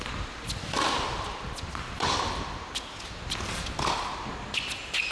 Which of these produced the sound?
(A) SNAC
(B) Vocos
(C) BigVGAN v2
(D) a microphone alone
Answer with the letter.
D